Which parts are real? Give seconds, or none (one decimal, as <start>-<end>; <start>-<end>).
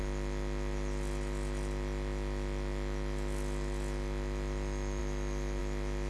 0.0-6.1